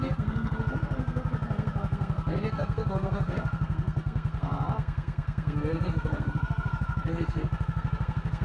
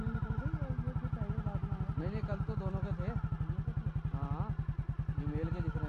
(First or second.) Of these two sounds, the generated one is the first